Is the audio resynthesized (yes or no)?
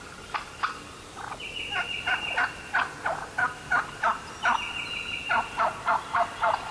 no